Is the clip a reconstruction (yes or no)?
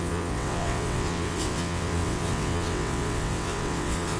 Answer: yes